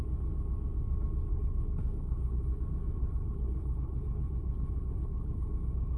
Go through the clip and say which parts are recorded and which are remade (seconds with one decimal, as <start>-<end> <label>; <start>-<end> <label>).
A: 0.0-1.3 recorded; 1.3-2.6 remade; 2.6-3.0 recorded; 3.0-6.0 remade

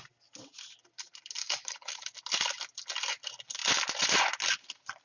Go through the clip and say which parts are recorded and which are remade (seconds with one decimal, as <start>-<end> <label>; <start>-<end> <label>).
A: 0.0-1.4 recorded; 1.4-2.1 remade; 2.1-5.0 recorded

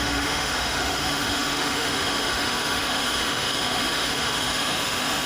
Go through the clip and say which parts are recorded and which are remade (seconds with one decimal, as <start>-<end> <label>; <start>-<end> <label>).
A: 0.0-5.3 remade

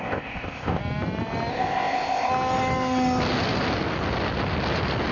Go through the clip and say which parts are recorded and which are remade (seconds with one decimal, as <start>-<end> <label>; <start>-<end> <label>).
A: 0.0-0.8 remade; 0.8-1.5 recorded; 1.5-2.3 remade; 2.3-5.1 recorded

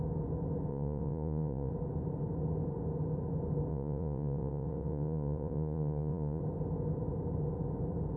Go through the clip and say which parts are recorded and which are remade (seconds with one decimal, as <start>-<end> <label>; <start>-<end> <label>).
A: 0.0-0.7 recorded; 0.7-1.7 remade; 1.7-3.7 recorded; 3.7-6.4 remade; 6.4-8.2 recorded

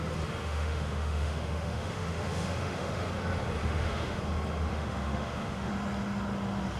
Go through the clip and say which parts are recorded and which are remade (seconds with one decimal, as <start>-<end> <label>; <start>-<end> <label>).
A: 0.0-0.4 recorded; 0.4-3.1 remade; 3.1-3.6 recorded; 3.6-4.2 remade; 4.2-4.7 recorded; 4.7-5.7 remade; 5.7-6.8 recorded

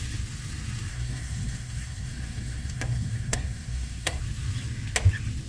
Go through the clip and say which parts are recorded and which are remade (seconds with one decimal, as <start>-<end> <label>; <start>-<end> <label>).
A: 0.0-0.9 recorded; 0.9-4.2 remade; 4.2-5.5 recorded